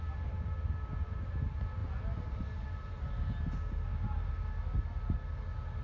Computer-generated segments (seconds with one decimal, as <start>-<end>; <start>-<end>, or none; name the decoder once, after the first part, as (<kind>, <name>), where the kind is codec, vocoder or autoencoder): none